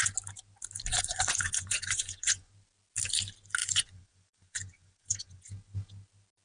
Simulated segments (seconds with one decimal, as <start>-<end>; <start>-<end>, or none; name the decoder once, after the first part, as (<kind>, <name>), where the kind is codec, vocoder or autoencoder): 0.9-2.5 (vocoder, Vocos); 3.6-5.5